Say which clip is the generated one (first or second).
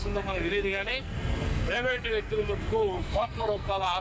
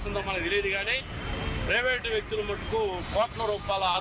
first